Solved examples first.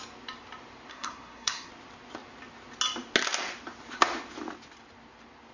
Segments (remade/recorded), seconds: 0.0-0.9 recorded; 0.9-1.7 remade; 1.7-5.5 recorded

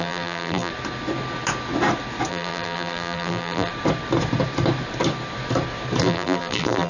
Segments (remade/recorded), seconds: 0.0-0.7 remade; 0.7-2.3 recorded; 2.3-3.7 remade; 3.7-6.0 recorded; 6.0-6.9 remade

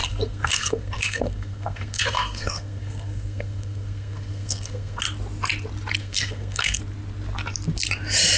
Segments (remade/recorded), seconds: 0.0-5.0 remade; 5.0-6.0 recorded; 6.0-6.8 remade; 6.8-8.4 recorded

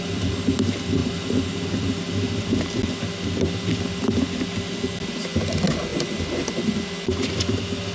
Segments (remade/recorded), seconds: 0.0-7.9 recorded

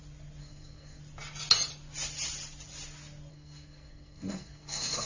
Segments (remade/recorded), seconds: 0.0-0.4 recorded; 0.4-1.0 remade; 1.0-3.3 recorded; 3.3-5.1 remade

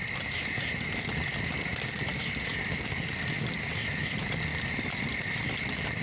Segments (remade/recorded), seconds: 0.0-6.0 recorded